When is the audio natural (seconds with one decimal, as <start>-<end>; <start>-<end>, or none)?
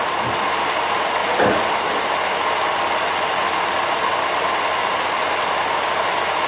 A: 0.0-6.5